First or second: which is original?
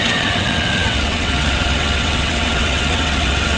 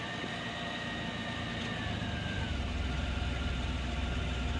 second